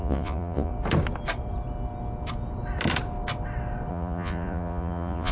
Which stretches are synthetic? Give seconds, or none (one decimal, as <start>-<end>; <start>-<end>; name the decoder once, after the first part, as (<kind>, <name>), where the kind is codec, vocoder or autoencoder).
0.0-0.7 (vocoder, Vocos); 3.9-5.3